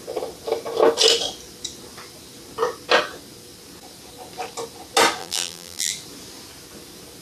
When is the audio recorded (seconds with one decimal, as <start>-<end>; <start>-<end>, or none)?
0.0-5.2; 5.9-7.2